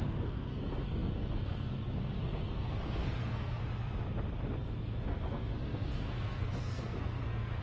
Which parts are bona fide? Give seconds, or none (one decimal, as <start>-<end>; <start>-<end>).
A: 3.6-4.6